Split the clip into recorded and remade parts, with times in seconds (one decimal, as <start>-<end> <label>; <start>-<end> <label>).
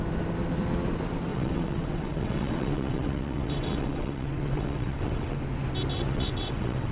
0.0-1.3 recorded; 1.3-5.4 remade; 5.4-5.9 recorded; 5.9-6.9 remade